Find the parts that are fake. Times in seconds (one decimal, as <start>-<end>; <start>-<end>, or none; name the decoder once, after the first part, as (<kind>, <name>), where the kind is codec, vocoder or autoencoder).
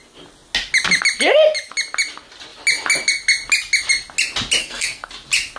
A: 4.6-5.1 (codec, SNAC)